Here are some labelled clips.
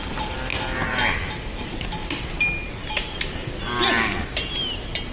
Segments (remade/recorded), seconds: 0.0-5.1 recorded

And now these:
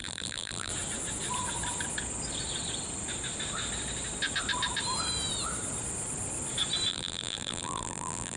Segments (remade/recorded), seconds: 0.0-0.7 remade; 0.7-6.9 recorded; 6.9-8.4 remade

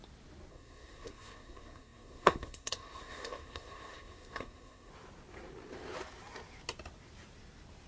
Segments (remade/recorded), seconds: 0.0-0.5 recorded; 0.5-4.9 remade; 4.9-7.9 recorded

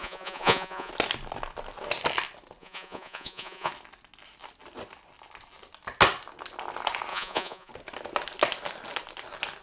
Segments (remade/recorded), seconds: 0.0-0.9 remade; 0.9-2.6 recorded; 2.6-3.7 remade; 3.7-7.1 recorded; 7.1-7.7 remade; 7.7-9.6 recorded

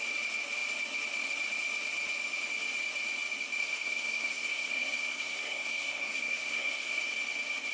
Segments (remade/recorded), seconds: 0.0-3.6 recorded; 3.6-7.0 remade; 7.0-7.7 recorded

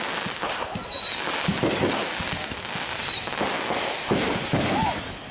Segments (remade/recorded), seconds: 0.0-5.3 recorded

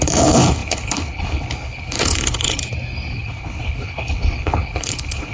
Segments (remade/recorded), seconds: 0.0-2.6 remade; 2.6-3.1 recorded; 3.1-5.3 remade

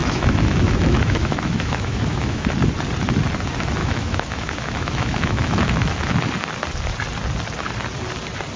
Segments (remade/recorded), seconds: 0.0-2.5 remade; 2.5-3.8 recorded; 3.8-6.1 remade; 6.1-8.6 recorded